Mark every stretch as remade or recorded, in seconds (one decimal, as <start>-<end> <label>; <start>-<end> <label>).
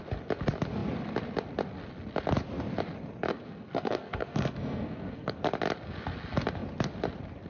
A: 0.0-3.3 recorded; 3.3-5.4 remade; 5.4-7.5 recorded